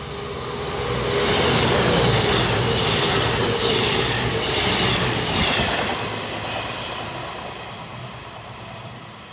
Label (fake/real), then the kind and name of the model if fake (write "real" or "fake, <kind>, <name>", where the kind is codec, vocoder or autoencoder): real